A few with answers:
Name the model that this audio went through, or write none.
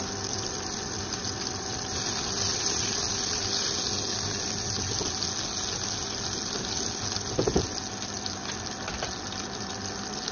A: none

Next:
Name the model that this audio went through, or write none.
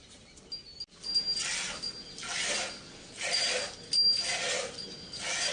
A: none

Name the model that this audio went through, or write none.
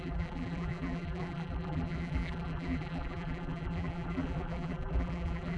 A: vocoder, BigVGAN v2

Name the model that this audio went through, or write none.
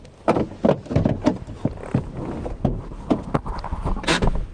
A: none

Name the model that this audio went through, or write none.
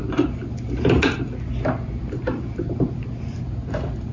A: none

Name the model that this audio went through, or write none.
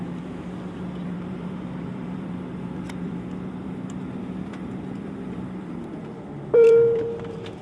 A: vocoder, BigVGAN v2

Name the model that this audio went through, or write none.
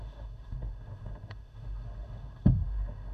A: autoencoder, DAC-VAE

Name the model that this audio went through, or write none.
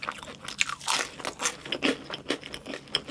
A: none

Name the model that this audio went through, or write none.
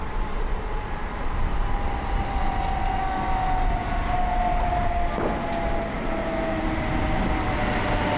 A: none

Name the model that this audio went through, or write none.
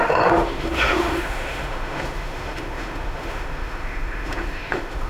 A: autoencoder, DAC-VAE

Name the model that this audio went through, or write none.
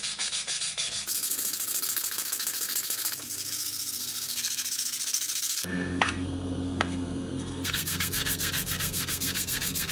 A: codec, SNAC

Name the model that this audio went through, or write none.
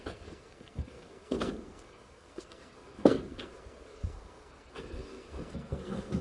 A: codec, SNAC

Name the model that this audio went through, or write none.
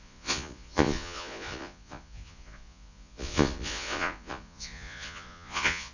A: vocoder, Vocos